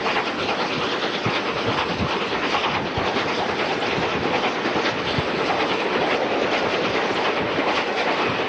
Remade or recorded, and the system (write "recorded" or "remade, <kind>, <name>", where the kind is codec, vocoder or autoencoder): recorded